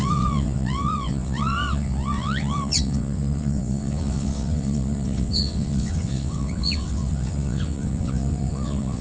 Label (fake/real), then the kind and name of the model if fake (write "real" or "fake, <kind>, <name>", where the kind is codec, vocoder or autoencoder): fake, vocoder, WaveNeXt